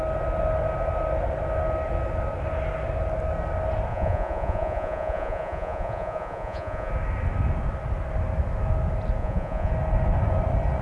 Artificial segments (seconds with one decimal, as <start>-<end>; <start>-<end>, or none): 3.9-6.9; 9.2-9.7